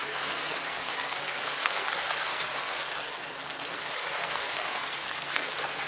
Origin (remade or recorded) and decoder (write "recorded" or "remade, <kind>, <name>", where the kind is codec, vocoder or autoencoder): remade, codec, SNAC